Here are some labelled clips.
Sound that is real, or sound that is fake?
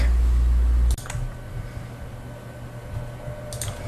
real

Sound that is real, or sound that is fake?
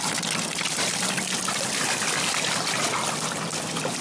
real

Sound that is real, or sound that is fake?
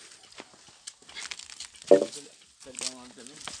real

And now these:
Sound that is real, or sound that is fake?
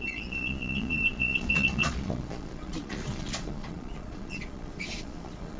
fake